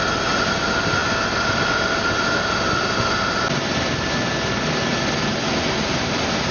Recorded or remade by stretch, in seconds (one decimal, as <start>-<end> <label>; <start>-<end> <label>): 0.0-6.5 recorded